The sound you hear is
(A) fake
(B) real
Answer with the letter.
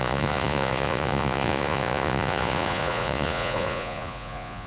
A